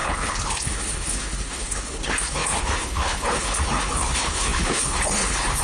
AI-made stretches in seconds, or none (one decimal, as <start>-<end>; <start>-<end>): 0.0-5.6